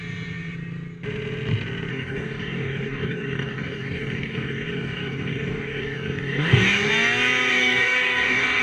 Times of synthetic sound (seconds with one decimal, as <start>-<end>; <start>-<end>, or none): 1.9-6.9; 7.5-8.6